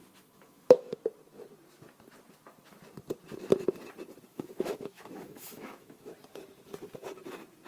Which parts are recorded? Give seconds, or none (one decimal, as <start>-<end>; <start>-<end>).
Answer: 1.0-4.3; 6.1-7.7